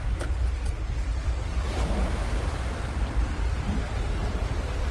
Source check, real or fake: real